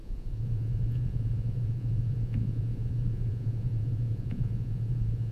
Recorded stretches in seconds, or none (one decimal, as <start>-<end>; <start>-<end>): none